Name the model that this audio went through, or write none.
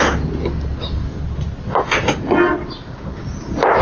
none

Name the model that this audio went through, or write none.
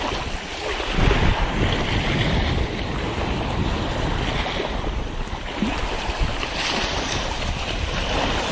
none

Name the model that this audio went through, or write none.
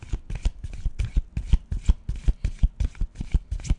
none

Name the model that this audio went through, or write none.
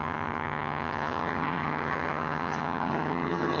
vocoder, HiFi-GAN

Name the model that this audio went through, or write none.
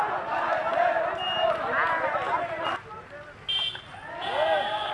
none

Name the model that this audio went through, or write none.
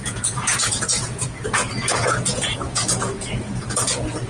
vocoder, Vocos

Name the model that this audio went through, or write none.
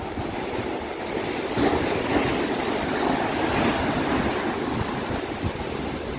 none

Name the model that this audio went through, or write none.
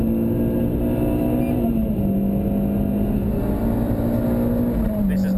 none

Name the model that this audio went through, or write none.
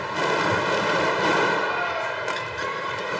none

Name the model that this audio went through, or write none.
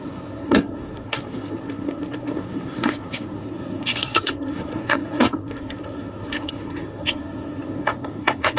codec, SNAC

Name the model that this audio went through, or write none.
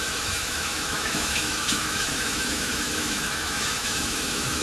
autoencoder, DAC-VAE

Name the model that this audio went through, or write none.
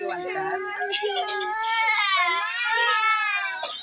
none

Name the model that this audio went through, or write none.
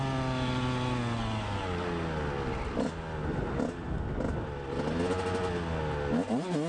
none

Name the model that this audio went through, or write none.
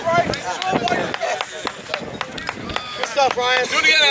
none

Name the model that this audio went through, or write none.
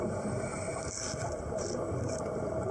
none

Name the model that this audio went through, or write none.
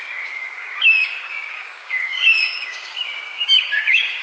codec, DAC